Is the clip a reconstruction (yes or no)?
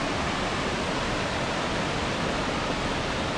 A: no